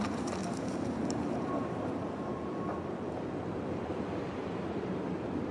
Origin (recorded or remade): remade